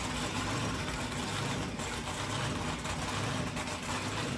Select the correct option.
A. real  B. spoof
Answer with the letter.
A